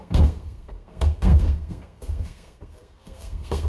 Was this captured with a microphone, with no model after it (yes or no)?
no